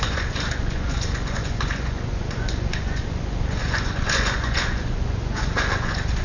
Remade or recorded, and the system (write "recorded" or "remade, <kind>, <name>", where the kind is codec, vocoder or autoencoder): remade, vocoder, Vocos